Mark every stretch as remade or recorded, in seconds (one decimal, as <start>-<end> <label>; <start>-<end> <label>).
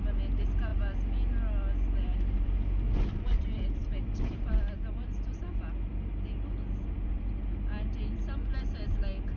0.0-9.4 recorded